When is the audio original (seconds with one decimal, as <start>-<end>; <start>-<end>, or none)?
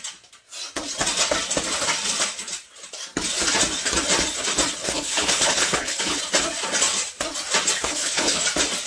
0.0-4.8; 6.2-7.8; 8.4-8.9